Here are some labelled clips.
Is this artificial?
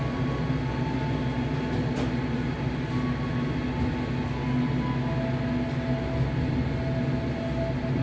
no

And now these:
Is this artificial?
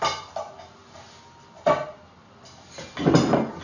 no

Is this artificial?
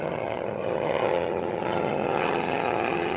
yes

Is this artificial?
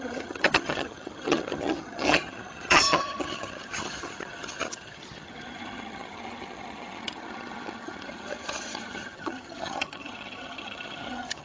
yes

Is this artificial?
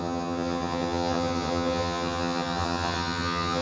yes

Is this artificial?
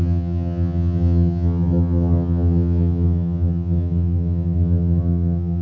yes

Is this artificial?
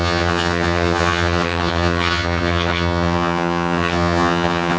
yes